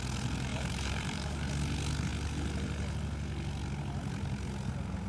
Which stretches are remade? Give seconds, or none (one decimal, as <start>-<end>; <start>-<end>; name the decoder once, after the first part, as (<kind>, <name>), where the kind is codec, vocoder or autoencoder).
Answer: 0.5-1.5 (vocoder, BigVGAN v2)